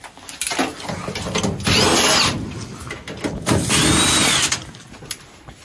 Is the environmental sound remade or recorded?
recorded